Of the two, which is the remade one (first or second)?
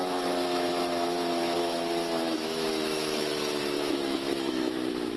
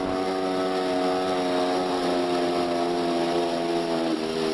first